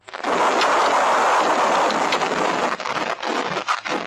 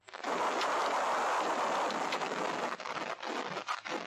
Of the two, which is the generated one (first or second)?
second